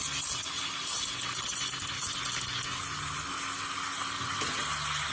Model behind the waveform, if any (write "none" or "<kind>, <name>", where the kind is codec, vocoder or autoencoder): none